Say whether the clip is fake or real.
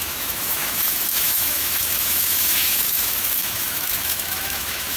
fake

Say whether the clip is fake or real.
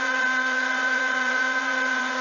fake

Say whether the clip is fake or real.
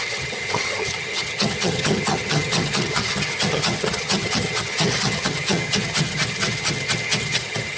fake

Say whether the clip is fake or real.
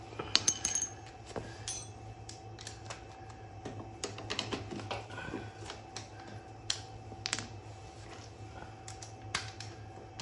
real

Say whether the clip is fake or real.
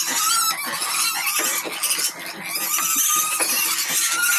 real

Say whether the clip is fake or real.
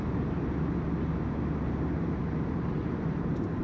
fake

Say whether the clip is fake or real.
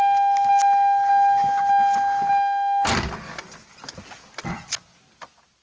real